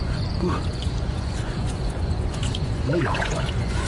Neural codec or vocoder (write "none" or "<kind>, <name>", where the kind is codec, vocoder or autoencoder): vocoder, Vocos